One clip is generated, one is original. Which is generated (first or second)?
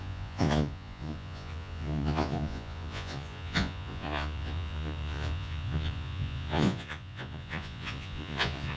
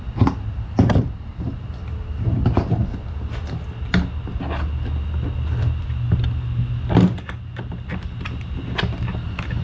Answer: first